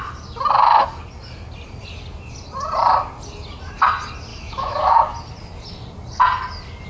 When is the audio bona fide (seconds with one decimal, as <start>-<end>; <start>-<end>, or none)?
0.0-4.3; 5.0-6.9